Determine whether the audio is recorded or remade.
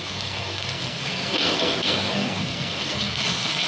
remade